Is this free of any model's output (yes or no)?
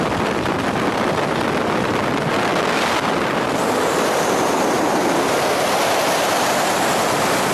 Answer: yes